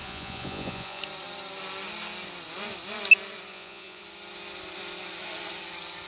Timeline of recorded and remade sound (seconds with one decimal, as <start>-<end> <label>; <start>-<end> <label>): 0.0-1.0 remade; 1.0-3.5 recorded; 3.5-4.0 remade; 4.0-6.1 recorded

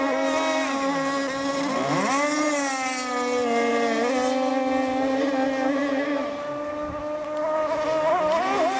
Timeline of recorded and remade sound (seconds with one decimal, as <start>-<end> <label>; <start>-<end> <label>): 0.0-8.8 recorded

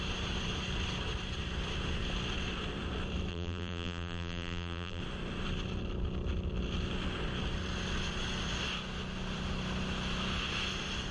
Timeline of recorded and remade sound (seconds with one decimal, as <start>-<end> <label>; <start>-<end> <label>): 0.0-3.3 recorded; 3.3-5.0 remade; 5.0-11.1 recorded

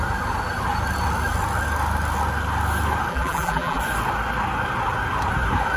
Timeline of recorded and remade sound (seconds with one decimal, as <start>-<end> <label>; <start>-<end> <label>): 0.0-3.1 recorded; 3.1-3.8 remade; 3.8-5.8 recorded